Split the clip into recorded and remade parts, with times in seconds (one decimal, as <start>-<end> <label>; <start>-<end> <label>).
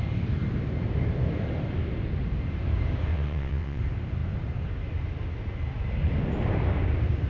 0.0-3.1 recorded; 3.1-3.8 remade; 3.8-7.3 recorded